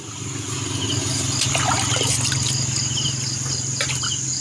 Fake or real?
real